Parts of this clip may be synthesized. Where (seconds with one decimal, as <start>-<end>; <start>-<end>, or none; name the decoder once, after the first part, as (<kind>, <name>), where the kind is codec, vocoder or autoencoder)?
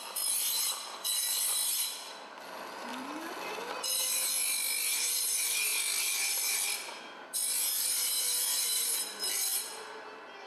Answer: 2.9-3.6 (vocoder, BigVGAN v2)